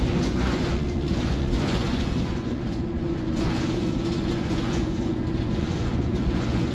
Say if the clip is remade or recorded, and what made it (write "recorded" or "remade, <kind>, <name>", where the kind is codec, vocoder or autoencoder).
remade, vocoder, Vocos